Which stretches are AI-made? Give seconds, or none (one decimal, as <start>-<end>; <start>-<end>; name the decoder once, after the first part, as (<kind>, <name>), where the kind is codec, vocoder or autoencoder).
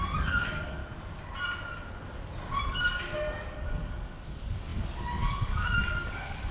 0.0-0.8 (codec, DAC); 2.6-6.5